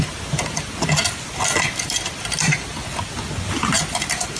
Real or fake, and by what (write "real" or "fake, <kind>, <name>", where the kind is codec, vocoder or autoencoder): real